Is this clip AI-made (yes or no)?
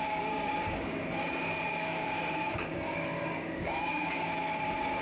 yes